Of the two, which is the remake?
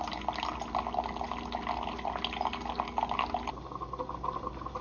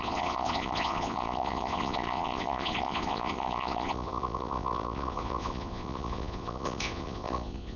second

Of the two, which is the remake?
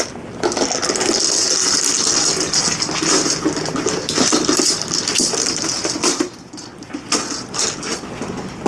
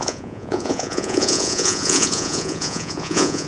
second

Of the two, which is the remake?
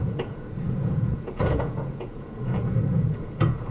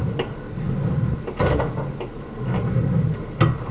first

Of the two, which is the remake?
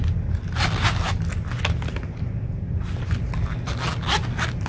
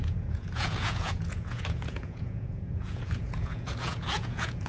second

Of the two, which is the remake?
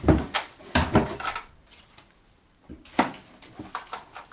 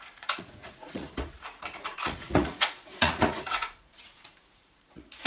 second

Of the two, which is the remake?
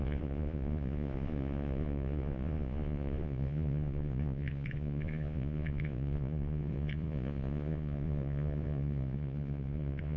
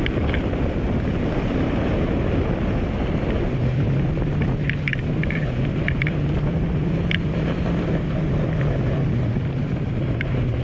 first